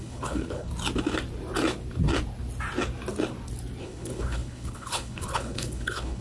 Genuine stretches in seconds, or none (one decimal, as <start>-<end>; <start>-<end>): 0.7-3.8